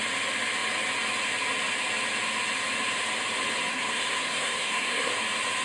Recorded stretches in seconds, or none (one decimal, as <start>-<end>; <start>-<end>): 0.0-3.7; 5.1-5.6